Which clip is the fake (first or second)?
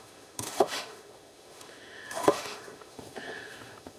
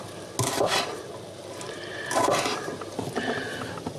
first